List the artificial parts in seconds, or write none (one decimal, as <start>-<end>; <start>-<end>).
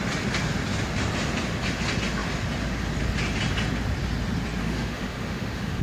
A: 4.6-5.8